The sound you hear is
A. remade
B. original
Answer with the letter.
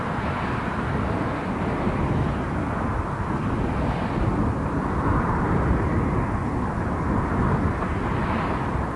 B